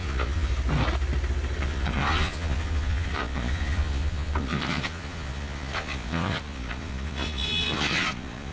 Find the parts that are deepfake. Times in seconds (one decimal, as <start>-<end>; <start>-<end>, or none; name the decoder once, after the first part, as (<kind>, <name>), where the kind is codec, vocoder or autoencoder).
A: 0.0-0.5 (vocoder, Vocos); 1.6-8.5